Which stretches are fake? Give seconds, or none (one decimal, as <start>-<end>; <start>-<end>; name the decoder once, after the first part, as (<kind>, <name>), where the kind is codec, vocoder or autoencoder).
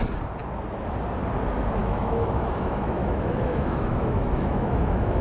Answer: 1.8-5.2 (autoencoder, DAC-VAE)